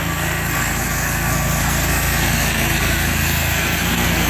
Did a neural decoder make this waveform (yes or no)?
yes